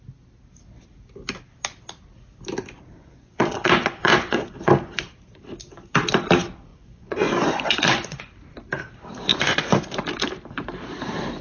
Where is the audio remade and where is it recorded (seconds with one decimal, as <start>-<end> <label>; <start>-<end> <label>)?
0.0-2.9 recorded; 2.9-5.0 remade; 5.0-6.7 recorded; 6.7-8.3 remade; 8.3-9.3 recorded; 9.3-9.8 remade; 9.8-11.4 recorded